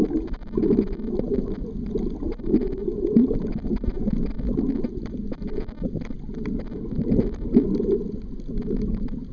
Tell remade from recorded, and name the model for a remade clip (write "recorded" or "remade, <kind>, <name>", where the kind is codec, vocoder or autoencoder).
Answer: recorded